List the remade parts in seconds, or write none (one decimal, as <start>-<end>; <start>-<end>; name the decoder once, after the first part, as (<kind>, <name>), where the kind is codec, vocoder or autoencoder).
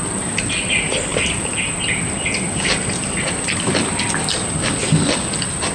none